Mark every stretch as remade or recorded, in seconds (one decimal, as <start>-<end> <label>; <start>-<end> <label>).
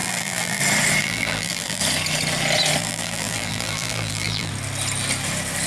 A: 0.0-0.6 remade; 0.6-1.0 recorded; 1.0-1.8 remade; 1.8-2.8 recorded; 2.8-4.5 remade; 4.5-5.7 recorded